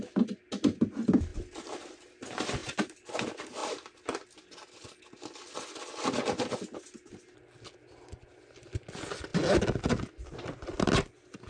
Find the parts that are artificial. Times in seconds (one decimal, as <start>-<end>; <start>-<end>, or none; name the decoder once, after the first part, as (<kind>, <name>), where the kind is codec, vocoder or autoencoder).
none